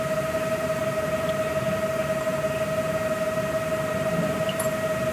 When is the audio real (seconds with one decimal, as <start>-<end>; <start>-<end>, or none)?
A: none